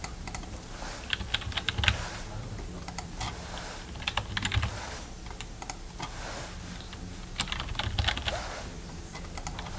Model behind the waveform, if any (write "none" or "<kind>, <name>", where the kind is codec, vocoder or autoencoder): none